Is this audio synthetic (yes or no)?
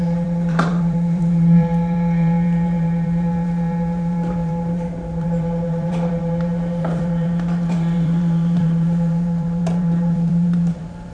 yes